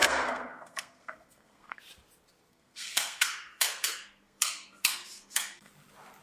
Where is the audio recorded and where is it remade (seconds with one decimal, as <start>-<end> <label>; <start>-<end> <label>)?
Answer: 0.0-1.8 remade; 1.8-2.5 recorded; 2.5-5.7 remade; 5.7-6.2 recorded

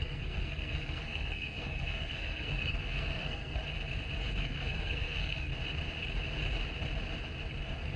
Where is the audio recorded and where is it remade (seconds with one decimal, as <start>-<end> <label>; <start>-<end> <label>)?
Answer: 0.0-3.6 remade; 3.6-4.3 recorded; 4.3-5.5 remade; 5.5-7.6 recorded; 7.6-8.0 remade